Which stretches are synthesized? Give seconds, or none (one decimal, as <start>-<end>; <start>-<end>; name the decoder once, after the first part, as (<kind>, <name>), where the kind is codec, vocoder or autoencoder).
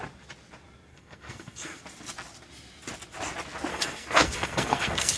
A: 0.9-1.8 (codec, SNAC); 3.7-5.2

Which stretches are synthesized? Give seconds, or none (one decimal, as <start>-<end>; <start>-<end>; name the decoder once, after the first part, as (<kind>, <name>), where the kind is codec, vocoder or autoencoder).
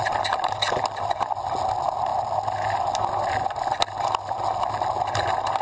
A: none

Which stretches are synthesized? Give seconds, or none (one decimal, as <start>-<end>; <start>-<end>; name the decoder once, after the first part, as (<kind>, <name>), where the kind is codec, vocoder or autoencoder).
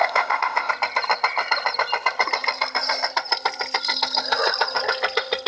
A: 0.0-0.7 (codec, ZipCodec)